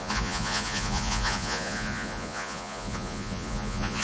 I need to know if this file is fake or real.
fake